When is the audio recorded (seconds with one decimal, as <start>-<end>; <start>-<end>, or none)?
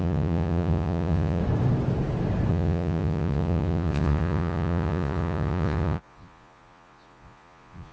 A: 1.4-2.5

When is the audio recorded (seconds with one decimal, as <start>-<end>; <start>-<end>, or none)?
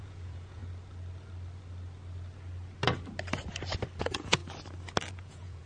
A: 0.6-4.0; 4.4-5.1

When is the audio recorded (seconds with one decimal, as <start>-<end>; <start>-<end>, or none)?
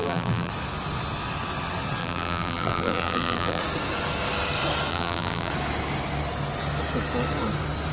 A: 0.5-2.0; 3.6-4.9; 5.5-7.9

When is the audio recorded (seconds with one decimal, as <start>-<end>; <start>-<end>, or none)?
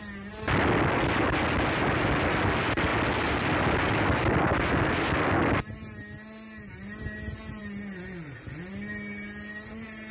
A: 0.0-10.1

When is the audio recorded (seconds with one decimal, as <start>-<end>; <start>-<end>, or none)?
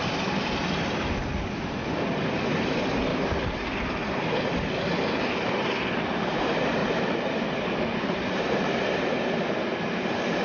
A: 0.0-3.1; 3.8-6.8; 9.3-10.4